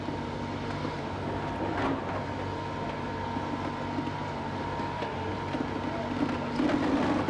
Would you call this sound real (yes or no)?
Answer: yes